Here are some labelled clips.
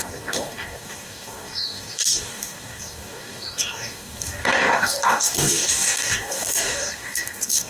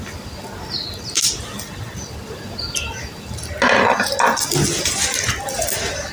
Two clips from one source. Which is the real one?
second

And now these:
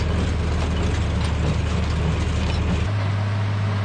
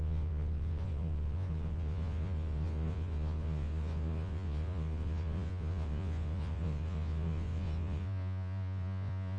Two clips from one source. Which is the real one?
first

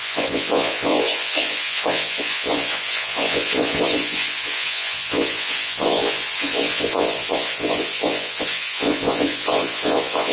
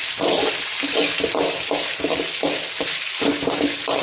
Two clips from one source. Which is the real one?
second